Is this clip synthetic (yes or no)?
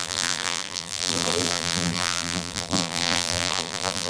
yes